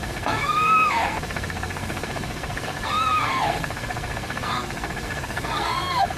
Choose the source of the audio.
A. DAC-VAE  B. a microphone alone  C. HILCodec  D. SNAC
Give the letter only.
D